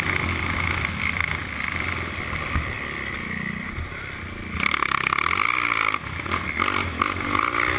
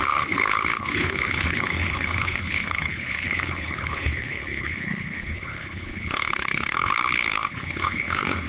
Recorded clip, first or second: first